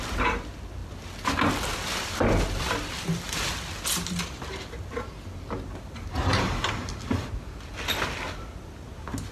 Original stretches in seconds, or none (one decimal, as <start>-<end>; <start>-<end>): 0.0-9.3